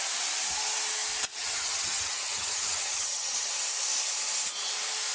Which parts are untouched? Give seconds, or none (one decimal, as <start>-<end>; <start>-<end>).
0.0-1.3; 3.6-5.1